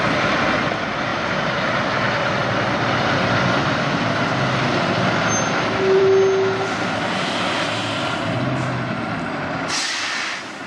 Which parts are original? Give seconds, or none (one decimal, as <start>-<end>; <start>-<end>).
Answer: 0.0-10.7